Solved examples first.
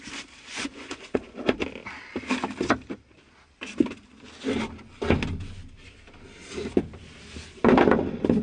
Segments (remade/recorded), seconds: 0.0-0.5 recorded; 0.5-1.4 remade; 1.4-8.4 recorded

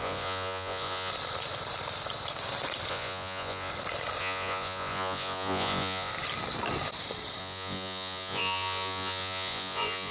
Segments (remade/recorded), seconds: 0.0-1.1 remade; 1.1-2.9 recorded; 2.9-3.7 remade; 3.7-4.2 recorded; 4.2-6.1 remade; 6.1-7.4 recorded; 7.4-10.1 remade